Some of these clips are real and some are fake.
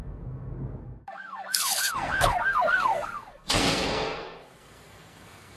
fake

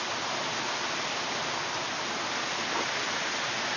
real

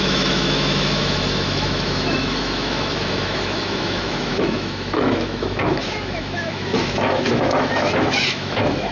fake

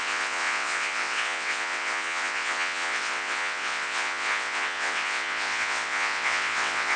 fake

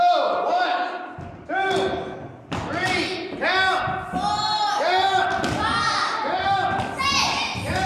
real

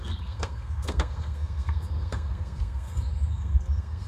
fake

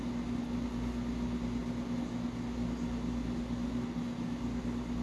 real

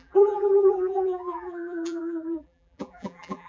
fake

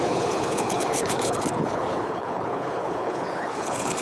fake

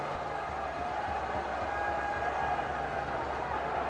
real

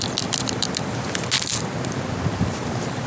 fake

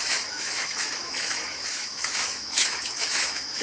fake